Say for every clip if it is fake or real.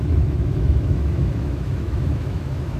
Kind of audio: fake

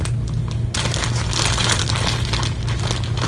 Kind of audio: real